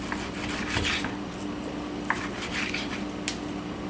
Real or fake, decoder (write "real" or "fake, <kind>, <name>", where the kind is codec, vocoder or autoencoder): real